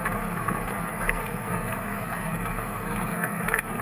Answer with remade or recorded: remade